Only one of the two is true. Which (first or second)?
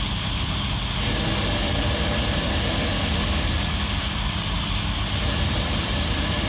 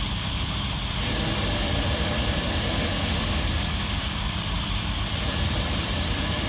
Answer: first